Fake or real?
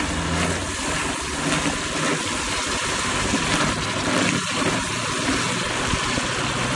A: real